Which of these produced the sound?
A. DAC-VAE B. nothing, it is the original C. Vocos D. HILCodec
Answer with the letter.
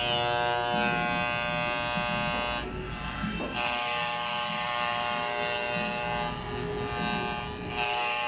B